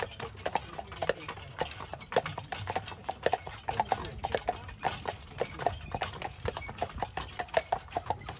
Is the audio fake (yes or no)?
no